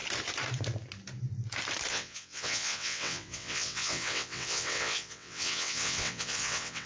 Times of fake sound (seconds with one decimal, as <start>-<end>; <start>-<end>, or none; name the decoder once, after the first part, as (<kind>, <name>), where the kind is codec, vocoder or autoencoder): 1.9-6.9 (vocoder, WaveNeXt)